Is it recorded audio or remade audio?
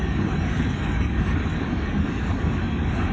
remade